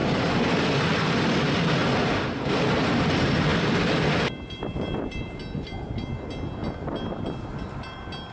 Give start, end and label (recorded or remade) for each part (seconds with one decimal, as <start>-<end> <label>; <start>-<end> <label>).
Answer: 0.0-1.1 remade; 1.1-1.8 recorded; 1.8-2.5 remade; 2.5-3.5 recorded; 3.5-5.4 remade; 5.4-8.3 recorded